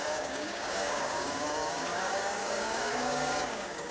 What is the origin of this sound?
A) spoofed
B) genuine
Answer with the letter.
A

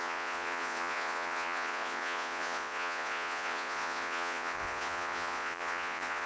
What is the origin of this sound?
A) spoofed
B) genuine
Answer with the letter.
A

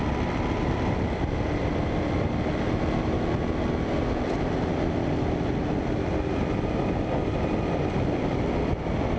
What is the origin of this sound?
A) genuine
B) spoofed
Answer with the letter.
A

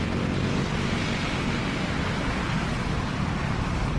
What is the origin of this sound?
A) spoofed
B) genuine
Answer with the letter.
B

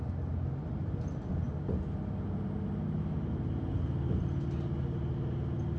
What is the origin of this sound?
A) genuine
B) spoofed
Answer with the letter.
A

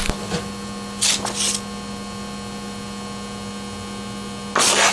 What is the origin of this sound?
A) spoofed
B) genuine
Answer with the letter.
B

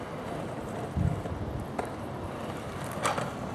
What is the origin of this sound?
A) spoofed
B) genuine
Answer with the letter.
B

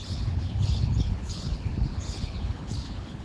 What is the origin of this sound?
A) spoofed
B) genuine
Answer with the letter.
A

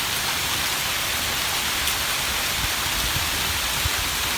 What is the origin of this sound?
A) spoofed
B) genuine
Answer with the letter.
B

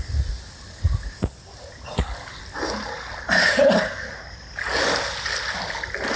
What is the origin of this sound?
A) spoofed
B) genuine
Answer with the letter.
B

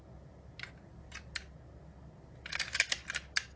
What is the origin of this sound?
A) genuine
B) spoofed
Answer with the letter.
A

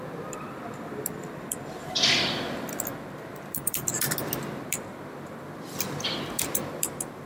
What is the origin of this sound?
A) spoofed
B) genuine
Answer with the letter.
A